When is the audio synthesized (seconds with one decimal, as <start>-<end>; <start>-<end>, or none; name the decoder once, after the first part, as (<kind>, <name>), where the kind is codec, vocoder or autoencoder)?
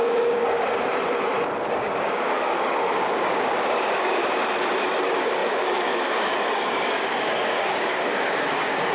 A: 0.0-0.7 (codec, DAC); 1.7-4.2; 5.0-8.9